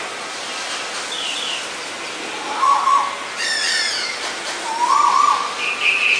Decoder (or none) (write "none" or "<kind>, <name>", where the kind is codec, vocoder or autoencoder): none